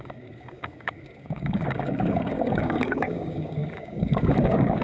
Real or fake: fake